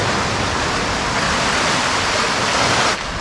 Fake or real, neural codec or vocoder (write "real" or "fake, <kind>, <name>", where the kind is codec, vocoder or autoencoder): real